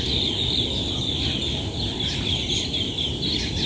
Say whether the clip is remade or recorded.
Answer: recorded